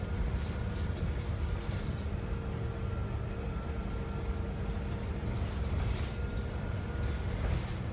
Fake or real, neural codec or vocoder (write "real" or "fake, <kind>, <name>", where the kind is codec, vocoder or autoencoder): real